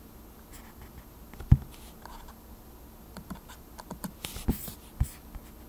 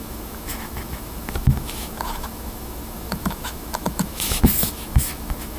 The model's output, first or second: second